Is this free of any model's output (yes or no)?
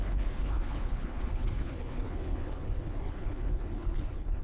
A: no